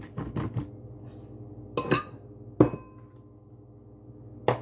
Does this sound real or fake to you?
real